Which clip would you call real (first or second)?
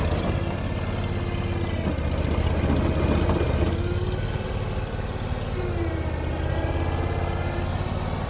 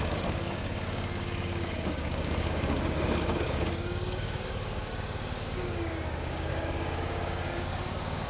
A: first